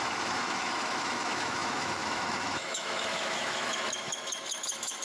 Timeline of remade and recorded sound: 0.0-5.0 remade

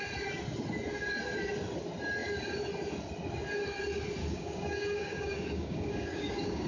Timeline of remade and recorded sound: 0.0-4.2 recorded; 4.2-6.7 remade

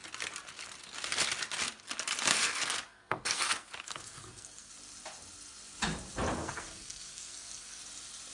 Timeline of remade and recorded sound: 0.0-2.3 recorded; 2.3-4.7 remade; 4.7-6.4 recorded; 6.4-7.8 remade; 7.8-8.3 recorded

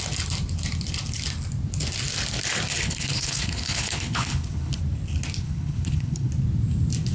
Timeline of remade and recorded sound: 0.0-2.7 recorded; 2.7-4.8 remade; 4.8-5.4 recorded; 5.4-6.3 remade; 6.3-7.1 recorded

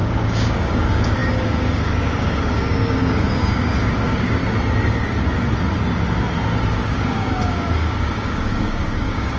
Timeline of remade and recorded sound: 0.0-4.4 remade; 4.4-6.7 recorded; 6.7-9.4 remade